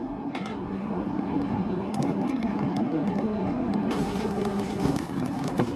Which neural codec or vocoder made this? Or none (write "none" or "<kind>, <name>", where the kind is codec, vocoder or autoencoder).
codec, SNAC